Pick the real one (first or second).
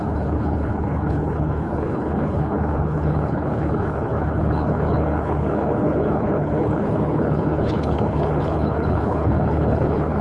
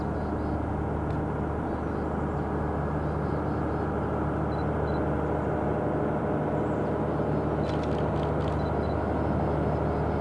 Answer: second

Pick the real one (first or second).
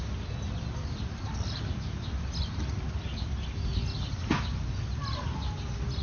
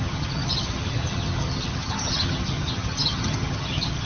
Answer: first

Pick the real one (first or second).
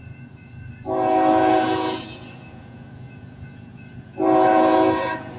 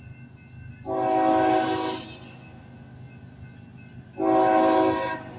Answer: second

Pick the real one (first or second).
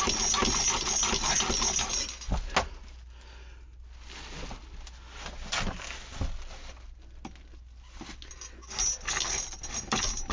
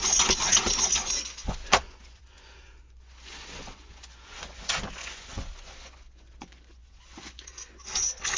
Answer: first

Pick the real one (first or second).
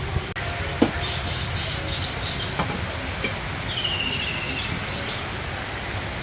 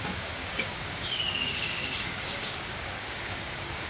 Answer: first